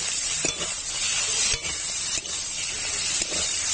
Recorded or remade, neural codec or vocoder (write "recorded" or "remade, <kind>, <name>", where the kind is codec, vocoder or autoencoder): remade, vocoder, BigVGAN v2